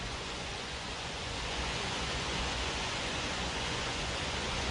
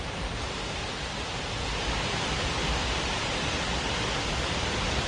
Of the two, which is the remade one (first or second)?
first